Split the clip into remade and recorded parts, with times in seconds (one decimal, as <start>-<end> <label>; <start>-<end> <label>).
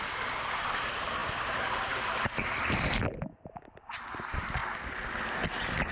0.0-1.2 recorded; 1.2-4.0 remade; 4.0-4.6 recorded; 4.6-5.5 remade; 5.5-5.9 recorded